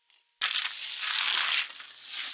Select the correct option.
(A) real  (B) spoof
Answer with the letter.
A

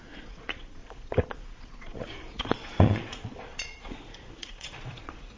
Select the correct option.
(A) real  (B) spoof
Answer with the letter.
B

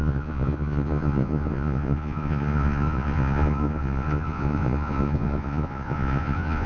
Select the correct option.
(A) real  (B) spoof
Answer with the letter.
B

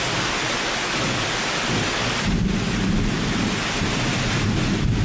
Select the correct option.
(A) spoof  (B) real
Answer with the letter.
B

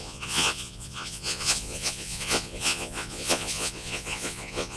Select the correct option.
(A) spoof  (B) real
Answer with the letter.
A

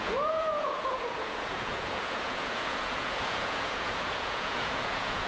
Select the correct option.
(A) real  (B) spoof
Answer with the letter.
B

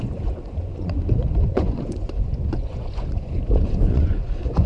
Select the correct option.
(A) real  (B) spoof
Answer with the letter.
B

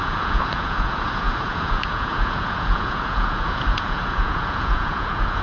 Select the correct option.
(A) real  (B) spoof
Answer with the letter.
B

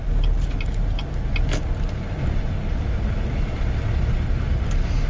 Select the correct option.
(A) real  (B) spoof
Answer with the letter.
A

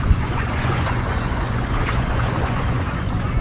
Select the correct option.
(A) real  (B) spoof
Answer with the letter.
B